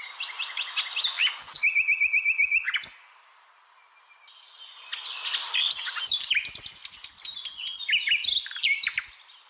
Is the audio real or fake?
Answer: real